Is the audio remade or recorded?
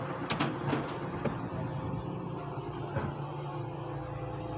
recorded